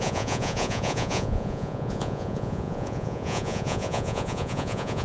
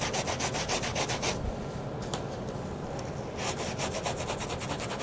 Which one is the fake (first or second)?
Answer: first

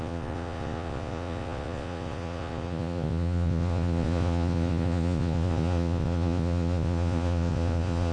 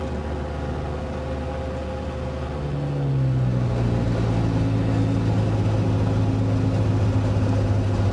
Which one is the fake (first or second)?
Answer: first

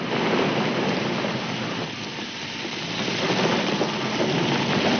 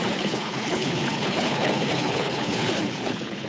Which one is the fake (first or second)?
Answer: second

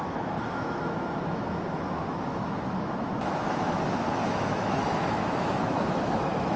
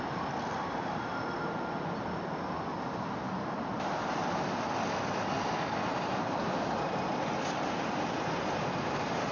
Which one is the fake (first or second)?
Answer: first